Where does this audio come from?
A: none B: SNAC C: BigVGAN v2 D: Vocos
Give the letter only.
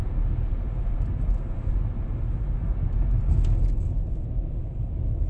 A